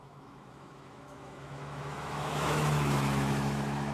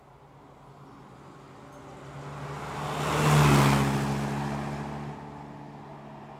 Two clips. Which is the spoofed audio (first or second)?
first